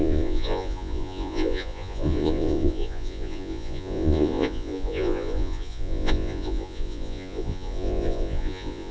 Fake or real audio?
fake